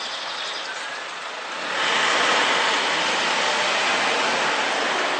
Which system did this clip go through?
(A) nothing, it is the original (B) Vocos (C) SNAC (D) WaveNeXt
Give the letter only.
A